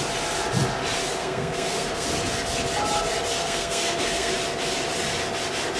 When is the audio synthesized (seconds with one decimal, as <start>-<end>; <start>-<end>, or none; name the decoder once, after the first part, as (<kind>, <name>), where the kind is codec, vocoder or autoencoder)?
1.2-2.1 (codec, SNAC); 3.4-4.3